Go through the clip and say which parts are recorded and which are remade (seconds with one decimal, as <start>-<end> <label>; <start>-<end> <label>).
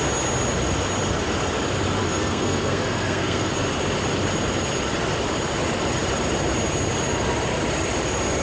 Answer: 0.0-2.0 recorded; 2.0-3.5 remade; 3.5-8.4 recorded